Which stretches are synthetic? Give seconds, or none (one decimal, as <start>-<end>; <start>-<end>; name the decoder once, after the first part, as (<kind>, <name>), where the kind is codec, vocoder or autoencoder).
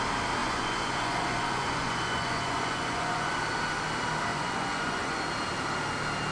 0.4-3.3 (vocoder, Vocos); 4.3-5.2